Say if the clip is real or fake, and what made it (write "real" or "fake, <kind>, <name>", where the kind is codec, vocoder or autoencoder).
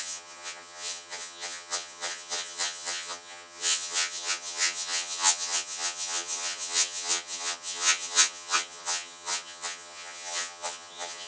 fake, vocoder, HiFi-GAN